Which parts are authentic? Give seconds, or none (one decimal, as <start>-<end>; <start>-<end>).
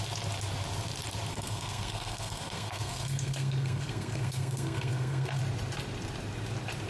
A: 0.0-1.3; 5.4-6.9